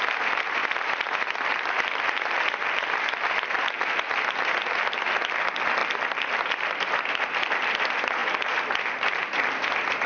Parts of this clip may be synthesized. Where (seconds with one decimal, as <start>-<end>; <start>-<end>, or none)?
none